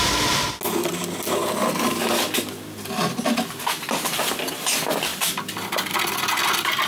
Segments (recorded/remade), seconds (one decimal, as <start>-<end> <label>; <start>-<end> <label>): 0.0-5.1 recorded; 5.1-6.0 remade; 6.0-6.9 recorded